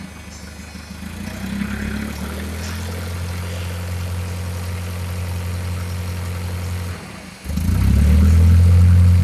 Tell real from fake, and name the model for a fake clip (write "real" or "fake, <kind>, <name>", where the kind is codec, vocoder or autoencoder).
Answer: real